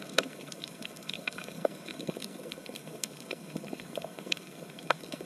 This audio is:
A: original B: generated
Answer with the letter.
B